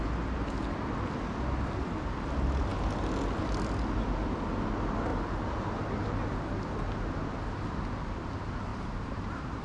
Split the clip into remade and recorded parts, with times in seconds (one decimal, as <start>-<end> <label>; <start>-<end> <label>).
0.0-8.7 recorded; 8.7-9.6 remade

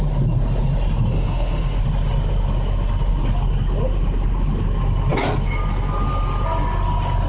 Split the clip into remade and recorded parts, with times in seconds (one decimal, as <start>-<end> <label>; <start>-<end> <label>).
0.0-1.1 recorded; 1.1-1.8 remade; 1.8-7.3 recorded

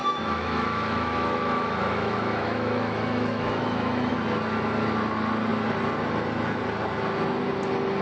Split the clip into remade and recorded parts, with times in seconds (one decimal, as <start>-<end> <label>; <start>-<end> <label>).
0.0-4.1 remade; 4.1-8.0 recorded

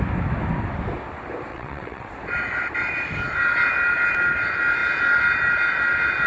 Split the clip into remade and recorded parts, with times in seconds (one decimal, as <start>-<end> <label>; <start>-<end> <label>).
0.0-1.5 recorded; 1.5-2.1 remade; 2.1-6.3 recorded

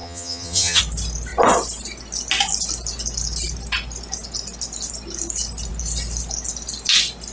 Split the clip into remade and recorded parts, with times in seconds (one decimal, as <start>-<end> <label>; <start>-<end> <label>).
0.0-0.8 remade; 0.8-7.3 recorded

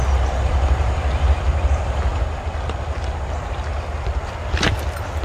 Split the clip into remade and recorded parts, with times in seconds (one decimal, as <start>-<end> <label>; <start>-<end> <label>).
0.0-0.5 recorded; 0.5-1.5 remade; 1.5-5.2 recorded

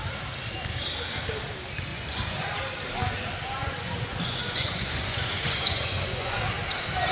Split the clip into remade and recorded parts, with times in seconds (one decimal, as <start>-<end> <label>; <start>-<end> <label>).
0.0-1.9 recorded; 1.9-2.6 remade; 2.6-3.6 recorded; 3.6-6.4 remade; 6.4-7.1 recorded

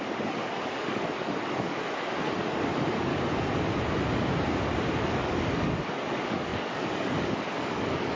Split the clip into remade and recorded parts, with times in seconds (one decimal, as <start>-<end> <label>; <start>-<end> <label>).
0.0-3.1 remade; 3.1-5.0 recorded; 5.0-8.2 remade